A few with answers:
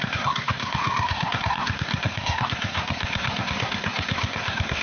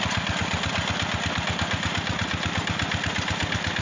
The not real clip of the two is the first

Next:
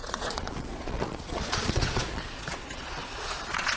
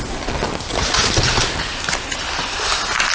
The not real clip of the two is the first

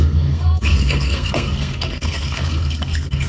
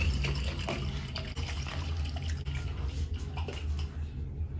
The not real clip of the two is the first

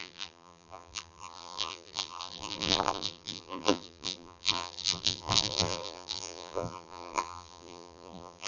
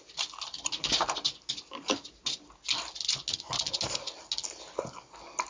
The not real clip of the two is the first